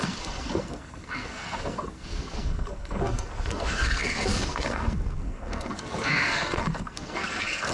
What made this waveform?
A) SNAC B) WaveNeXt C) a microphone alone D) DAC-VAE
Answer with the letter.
A